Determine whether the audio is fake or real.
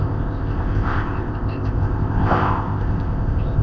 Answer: fake